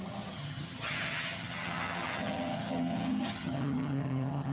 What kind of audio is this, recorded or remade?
remade